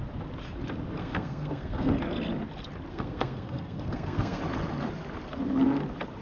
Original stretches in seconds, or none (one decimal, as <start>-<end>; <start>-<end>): 0.0-1.0; 1.9-2.9; 4.4-6.2